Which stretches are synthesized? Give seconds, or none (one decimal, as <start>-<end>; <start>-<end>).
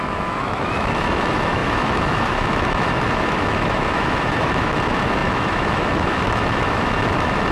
0.0-7.5